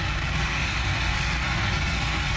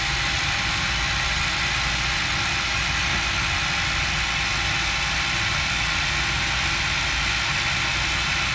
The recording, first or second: second